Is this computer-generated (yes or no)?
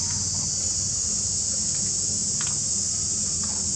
no